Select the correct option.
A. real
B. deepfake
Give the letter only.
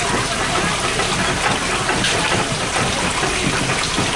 A